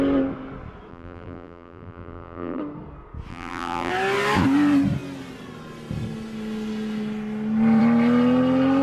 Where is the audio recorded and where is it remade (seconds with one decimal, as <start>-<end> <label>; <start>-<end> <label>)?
0.0-0.9 recorded; 0.9-2.6 remade; 2.6-3.3 recorded; 3.3-3.9 remade; 3.9-8.8 recorded